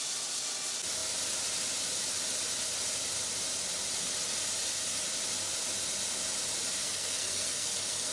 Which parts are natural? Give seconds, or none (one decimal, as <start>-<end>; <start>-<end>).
0.0-6.8